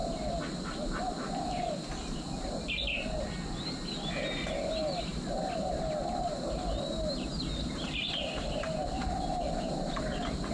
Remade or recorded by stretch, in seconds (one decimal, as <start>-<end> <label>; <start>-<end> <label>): 0.0-10.5 recorded